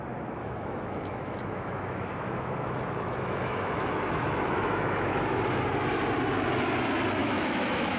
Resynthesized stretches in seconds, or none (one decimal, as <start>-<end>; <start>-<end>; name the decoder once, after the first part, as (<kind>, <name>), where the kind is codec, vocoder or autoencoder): 0.4-5.2 (autoencoder, DAC-VAE); 7.2-8.0